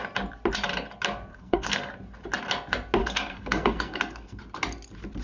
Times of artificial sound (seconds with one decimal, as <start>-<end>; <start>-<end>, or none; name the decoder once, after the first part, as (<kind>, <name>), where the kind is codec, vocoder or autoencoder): 1.3-1.9 (codec, SNAC); 3.0-4.4